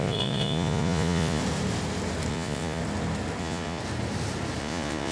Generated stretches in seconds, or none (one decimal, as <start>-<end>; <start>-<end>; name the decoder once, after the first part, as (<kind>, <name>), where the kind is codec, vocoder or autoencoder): 0.0-1.4 (vocoder, Vocos); 2.3-2.8; 3.4-3.8; 4.6-5.1